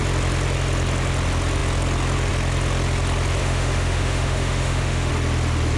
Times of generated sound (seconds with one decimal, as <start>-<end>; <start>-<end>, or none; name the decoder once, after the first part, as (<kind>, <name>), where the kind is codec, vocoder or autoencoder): 3.4-5.1 (autoencoder, DAC-VAE)